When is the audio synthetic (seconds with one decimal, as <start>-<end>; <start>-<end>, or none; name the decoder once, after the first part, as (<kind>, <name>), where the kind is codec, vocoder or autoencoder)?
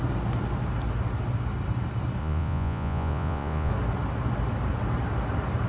2.2-3.7 (vocoder, Vocos)